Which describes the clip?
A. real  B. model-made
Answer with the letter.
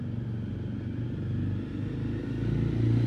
A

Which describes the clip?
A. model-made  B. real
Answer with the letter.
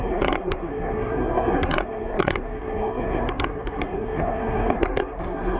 A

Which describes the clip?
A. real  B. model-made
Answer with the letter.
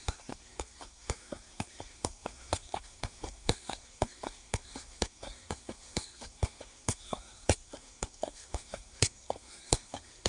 B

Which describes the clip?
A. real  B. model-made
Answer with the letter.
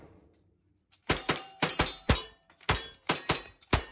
B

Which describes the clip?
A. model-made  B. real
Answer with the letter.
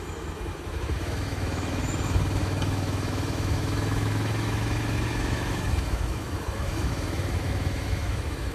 A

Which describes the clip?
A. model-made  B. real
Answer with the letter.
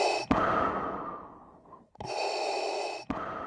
B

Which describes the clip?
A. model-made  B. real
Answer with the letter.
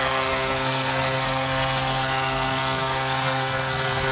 A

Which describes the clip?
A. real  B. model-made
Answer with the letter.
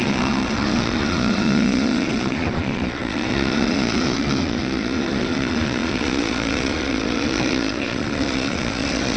B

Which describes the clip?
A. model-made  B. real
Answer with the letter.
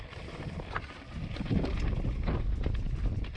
B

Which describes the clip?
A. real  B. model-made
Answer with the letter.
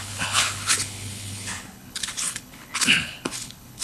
B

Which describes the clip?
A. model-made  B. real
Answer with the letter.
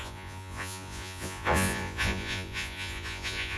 A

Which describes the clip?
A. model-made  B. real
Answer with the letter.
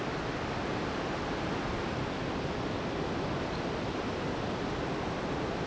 B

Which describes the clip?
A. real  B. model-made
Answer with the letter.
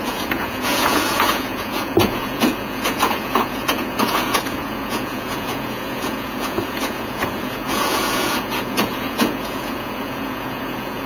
B